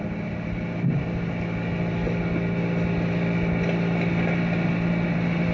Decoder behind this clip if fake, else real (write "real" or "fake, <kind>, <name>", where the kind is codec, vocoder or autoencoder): real